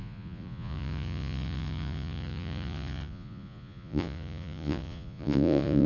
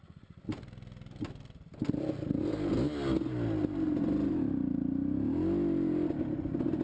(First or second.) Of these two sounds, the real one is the second